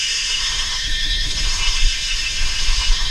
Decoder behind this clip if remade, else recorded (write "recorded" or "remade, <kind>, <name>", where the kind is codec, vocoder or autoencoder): remade, autoencoder, DAC-VAE